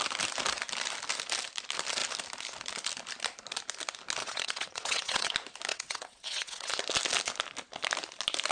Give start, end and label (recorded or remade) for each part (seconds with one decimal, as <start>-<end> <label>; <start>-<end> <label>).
0.0-4.2 recorded; 4.2-5.3 remade; 5.3-5.7 recorded; 5.7-6.7 remade; 6.7-8.5 recorded